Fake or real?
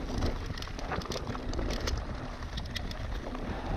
real